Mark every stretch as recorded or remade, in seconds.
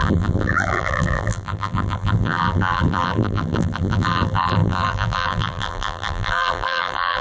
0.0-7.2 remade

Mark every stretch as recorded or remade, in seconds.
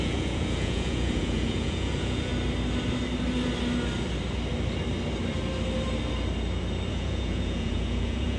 0.0-2.3 remade; 2.3-6.9 recorded; 6.9-8.4 remade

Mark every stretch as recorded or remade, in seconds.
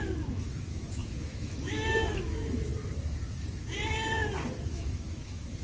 0.0-2.7 remade; 2.7-4.7 recorded; 4.7-5.6 remade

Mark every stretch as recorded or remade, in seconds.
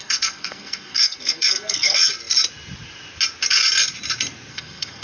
0.0-2.1 remade; 2.1-4.5 recorded; 4.5-5.0 remade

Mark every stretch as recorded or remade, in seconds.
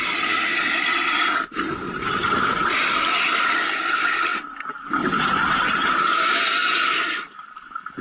0.0-8.0 recorded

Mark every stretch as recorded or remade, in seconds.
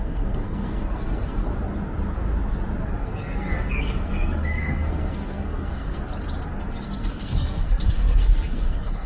0.0-1.4 remade; 1.4-3.0 recorded; 3.0-6.0 remade; 6.0-6.7 recorded; 6.7-9.1 remade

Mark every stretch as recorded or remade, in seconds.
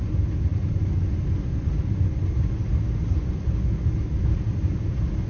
0.0-5.3 recorded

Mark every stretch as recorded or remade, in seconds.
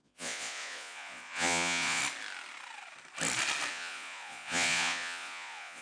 0.0-2.0 remade; 2.0-3.7 recorded; 3.7-5.8 remade